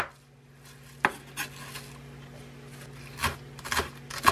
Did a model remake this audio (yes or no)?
no